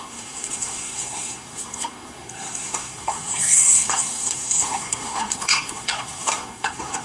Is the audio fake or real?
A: fake